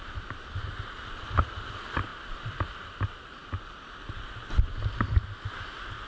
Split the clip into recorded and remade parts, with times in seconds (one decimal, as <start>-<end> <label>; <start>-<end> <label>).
0.0-6.1 recorded